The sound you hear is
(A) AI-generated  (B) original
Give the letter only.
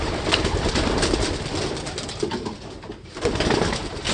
B